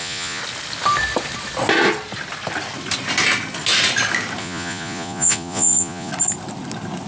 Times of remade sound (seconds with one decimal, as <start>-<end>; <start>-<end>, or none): 0.0-0.4; 4.4-6.1